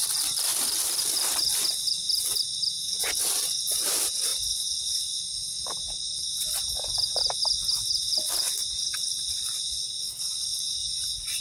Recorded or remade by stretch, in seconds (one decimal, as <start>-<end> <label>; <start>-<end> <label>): 0.0-0.5 remade; 0.5-3.8 recorded; 3.8-8.6 remade; 8.6-9.3 recorded; 9.3-10.5 remade; 10.5-11.4 recorded